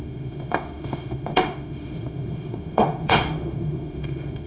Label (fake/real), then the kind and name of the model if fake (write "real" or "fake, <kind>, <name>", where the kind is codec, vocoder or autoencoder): fake, autoencoder, DAC-VAE